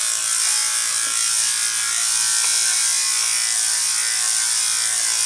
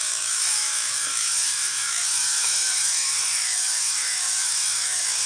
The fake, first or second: second